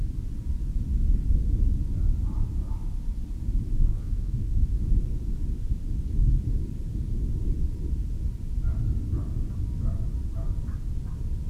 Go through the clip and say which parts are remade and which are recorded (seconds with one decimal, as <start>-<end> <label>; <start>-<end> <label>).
0.0-3.9 recorded; 3.9-4.7 remade; 4.7-11.5 recorded